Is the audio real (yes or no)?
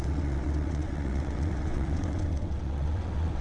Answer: no